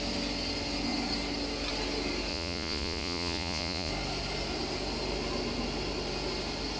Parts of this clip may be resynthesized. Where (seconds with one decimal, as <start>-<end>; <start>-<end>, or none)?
2.3-3.9